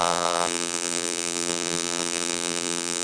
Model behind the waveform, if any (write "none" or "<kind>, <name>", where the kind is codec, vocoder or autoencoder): vocoder, BigVGAN v2